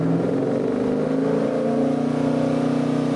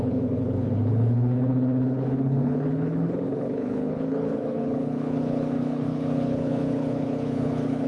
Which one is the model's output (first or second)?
second